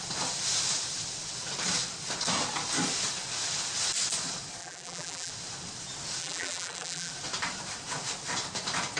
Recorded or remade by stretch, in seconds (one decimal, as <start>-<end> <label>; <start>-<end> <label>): 0.0-4.6 recorded; 4.6-5.3 remade; 5.3-6.2 recorded; 6.2-7.1 remade; 7.1-9.0 recorded